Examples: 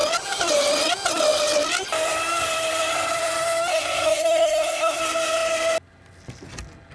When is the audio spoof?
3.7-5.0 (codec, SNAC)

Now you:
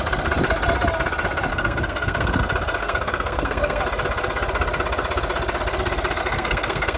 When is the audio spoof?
1.5-2.4 (codec, SNAC); 2.8-3.8; 6.2-7.0

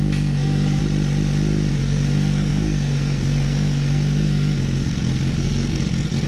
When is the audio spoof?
0.0-0.8 (codec, SNAC); 1.7-6.3